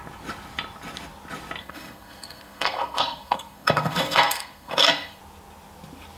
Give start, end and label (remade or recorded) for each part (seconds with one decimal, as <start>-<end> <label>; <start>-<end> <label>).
0.0-1.6 recorded; 1.6-5.2 remade; 5.2-6.2 recorded